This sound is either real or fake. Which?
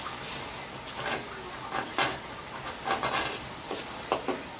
real